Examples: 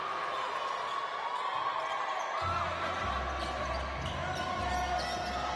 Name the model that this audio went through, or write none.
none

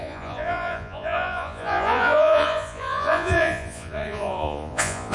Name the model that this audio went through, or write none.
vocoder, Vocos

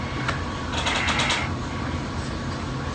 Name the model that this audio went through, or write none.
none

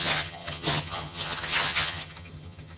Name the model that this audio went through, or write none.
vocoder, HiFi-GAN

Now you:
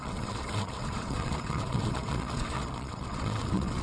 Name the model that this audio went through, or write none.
vocoder, WaveNeXt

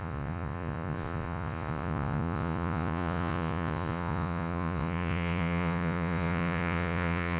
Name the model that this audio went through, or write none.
vocoder, Vocos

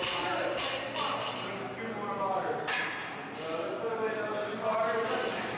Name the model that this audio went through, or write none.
none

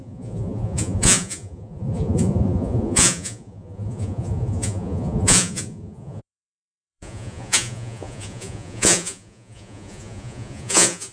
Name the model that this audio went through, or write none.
vocoder, Vocos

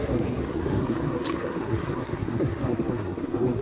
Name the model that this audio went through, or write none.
codec, SNAC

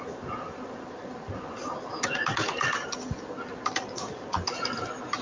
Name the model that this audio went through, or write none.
none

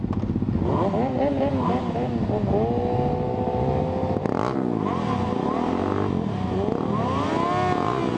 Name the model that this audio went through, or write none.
none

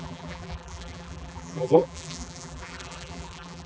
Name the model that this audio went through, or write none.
vocoder, BigVGAN v2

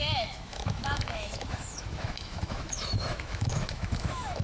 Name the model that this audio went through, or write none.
autoencoder, DAC-VAE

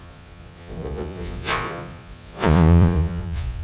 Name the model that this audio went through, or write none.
vocoder, Vocos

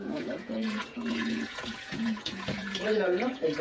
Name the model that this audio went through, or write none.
vocoder, Vocos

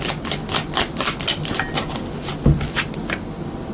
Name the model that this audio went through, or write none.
none